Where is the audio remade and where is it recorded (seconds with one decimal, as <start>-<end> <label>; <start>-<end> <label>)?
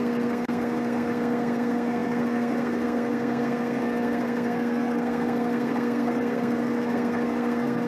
0.0-7.9 remade